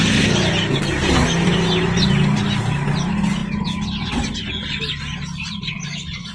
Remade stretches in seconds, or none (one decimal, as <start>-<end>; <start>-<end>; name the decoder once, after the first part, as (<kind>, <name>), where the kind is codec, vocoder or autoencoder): none